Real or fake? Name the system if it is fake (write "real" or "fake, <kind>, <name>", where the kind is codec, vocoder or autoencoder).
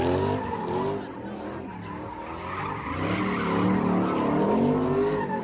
real